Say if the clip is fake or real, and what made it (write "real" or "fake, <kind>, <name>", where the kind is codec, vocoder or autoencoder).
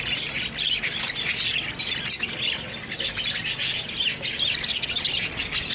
real